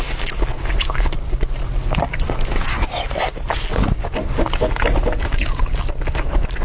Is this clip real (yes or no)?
yes